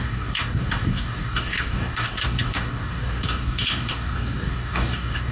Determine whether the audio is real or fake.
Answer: fake